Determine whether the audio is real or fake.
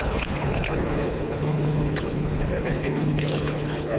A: fake